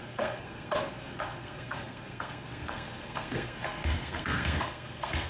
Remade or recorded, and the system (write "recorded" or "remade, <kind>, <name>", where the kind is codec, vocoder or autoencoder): remade, codec, SNAC